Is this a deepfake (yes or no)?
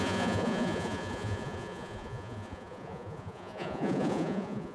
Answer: yes